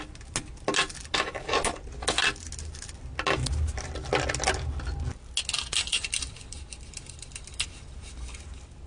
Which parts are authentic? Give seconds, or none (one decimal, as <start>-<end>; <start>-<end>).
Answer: 0.0-5.9; 6.6-8.9